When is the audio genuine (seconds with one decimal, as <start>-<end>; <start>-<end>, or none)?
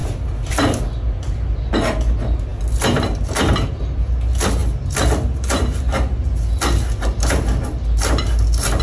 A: 0.0-8.8